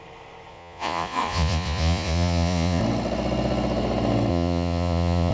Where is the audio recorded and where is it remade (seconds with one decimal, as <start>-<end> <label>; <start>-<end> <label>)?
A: 0.0-0.5 recorded; 0.5-2.8 remade; 2.8-4.3 recorded; 4.3-5.3 remade